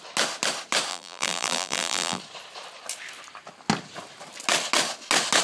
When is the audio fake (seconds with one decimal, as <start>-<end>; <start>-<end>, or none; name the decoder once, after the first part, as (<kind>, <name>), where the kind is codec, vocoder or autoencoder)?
0.9-2.2 (vocoder, BigVGAN v2)